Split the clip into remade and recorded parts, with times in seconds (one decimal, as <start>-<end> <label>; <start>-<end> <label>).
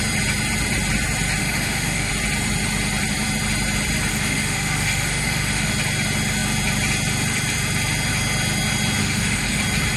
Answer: 0.0-1.4 recorded; 1.4-2.1 remade; 2.1-4.1 recorded; 4.1-5.7 remade; 5.7-9.0 recorded; 9.0-9.6 remade; 9.6-10.0 recorded